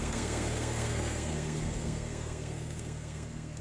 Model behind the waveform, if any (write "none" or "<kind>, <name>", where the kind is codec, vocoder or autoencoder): codec, SNAC